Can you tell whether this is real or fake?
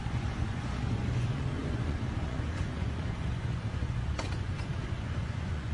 fake